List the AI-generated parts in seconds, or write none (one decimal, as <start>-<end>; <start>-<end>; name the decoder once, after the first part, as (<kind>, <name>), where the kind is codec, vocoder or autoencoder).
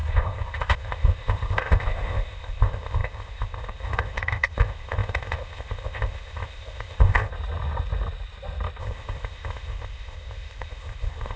0.0-7.3 (codec, ZipCodec); 8.8-11.4